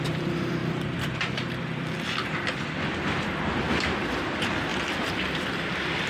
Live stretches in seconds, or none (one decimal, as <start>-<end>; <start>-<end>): none